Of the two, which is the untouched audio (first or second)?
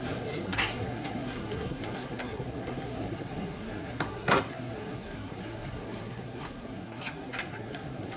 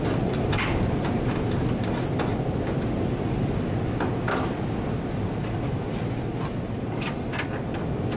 second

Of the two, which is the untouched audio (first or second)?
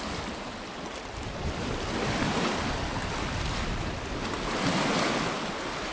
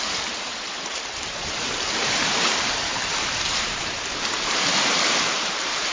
first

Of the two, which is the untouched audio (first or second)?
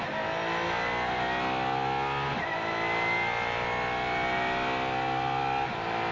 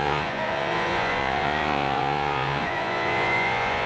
first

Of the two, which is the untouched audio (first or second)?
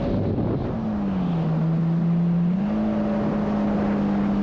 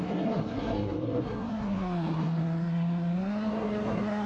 first